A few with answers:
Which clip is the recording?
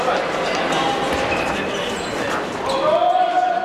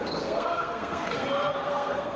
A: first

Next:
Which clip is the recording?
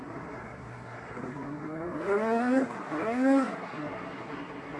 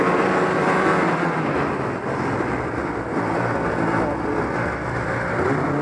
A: second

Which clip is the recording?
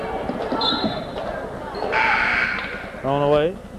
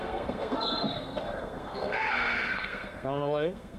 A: first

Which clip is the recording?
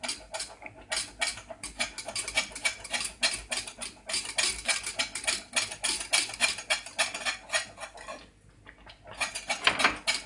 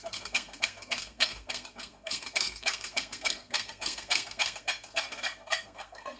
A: first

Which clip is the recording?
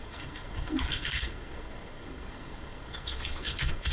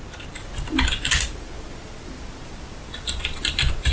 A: second